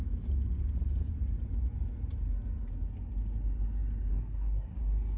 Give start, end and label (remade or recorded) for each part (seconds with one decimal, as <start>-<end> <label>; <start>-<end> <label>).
0.0-4.1 recorded; 4.1-4.8 remade; 4.8-5.2 recorded